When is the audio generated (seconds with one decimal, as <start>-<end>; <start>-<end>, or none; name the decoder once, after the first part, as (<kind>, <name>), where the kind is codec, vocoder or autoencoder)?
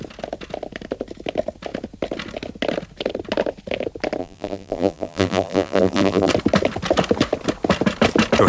4.2-6.3 (vocoder, BigVGAN v2)